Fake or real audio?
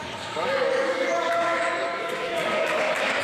fake